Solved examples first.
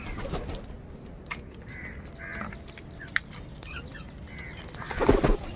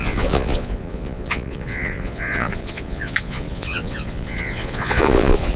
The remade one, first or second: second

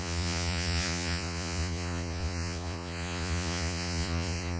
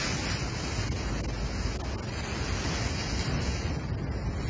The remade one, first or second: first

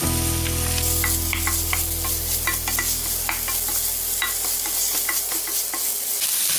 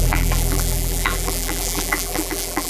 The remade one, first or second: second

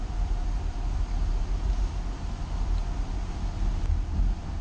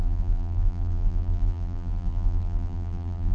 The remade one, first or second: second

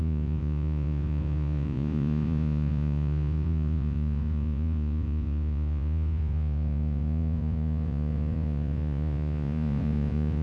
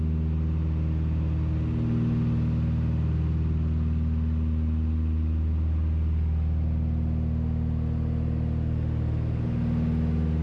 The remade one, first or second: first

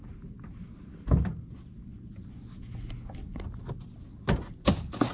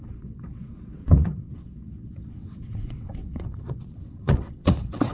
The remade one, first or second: second